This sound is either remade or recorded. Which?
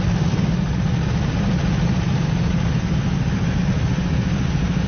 recorded